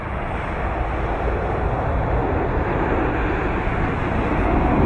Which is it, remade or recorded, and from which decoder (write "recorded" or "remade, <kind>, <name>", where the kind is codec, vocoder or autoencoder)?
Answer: recorded